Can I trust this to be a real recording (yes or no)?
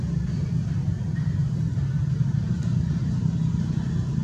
yes